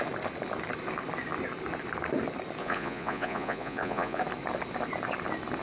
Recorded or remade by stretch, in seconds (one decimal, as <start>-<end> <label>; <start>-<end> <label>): 0.0-2.6 recorded; 2.6-4.2 remade; 4.2-5.6 recorded

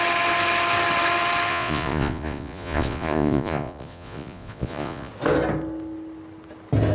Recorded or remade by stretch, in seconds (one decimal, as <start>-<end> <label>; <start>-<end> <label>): 0.0-1.5 recorded; 1.5-5.1 remade; 5.1-6.9 recorded

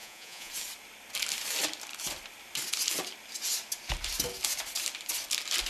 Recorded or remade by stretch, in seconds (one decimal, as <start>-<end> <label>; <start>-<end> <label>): 0.0-0.5 remade; 0.5-5.7 recorded